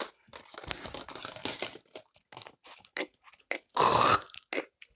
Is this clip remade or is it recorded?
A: recorded